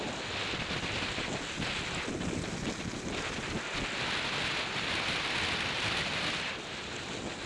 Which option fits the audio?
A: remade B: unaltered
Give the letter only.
B